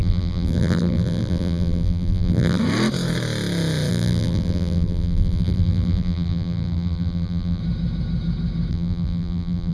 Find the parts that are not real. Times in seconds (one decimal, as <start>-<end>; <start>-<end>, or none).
0.0-2.6; 3.9-7.6; 8.7-9.7